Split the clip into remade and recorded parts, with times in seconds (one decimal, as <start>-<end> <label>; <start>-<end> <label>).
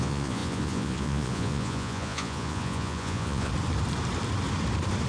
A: 0.0-3.5 remade; 3.5-5.1 recorded